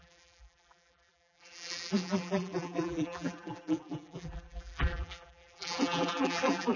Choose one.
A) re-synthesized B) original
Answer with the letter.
A